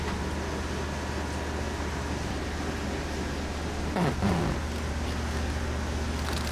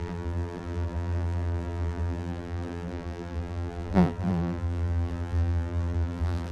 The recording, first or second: first